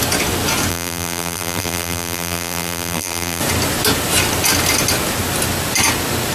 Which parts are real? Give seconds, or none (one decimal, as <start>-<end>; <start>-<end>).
0.0-0.7; 3.4-6.3